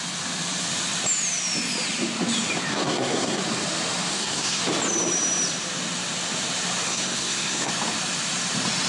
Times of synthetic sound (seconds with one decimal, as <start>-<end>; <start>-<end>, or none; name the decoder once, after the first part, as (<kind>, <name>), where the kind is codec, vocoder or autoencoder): 2.7-3.4 (codec, SNAC); 4.1-4.6; 6.9-7.7